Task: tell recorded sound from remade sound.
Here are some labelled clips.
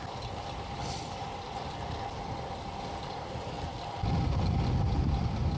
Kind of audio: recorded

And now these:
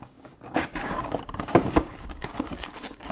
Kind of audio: remade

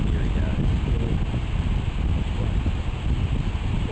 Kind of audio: recorded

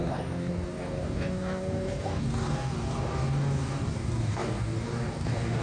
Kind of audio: remade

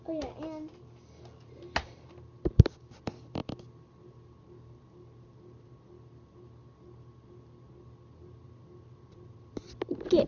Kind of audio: recorded